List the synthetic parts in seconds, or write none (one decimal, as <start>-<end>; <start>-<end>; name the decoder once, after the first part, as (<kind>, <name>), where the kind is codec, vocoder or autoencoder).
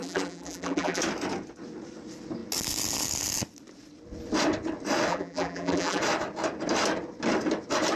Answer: 0.0-1.0 (vocoder, BigVGAN v2); 5.1-6.0